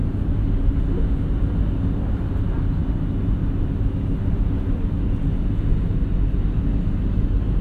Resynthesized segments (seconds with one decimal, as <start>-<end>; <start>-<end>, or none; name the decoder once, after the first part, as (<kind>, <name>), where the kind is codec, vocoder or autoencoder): none